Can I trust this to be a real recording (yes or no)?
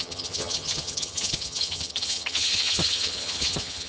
no